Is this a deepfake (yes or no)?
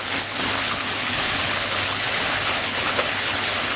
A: yes